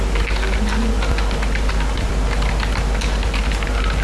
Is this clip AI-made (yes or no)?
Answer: no